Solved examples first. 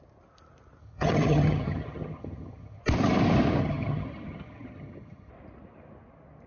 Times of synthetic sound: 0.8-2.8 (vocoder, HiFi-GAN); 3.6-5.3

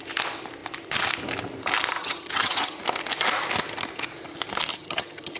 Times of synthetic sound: 2.0-2.8 (vocoder, HiFi-GAN); 4.7-5.4